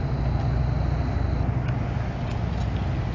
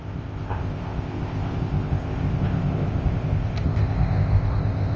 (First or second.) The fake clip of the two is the second